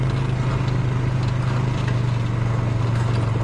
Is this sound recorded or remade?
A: recorded